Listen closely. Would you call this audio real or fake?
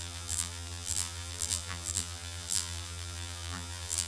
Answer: fake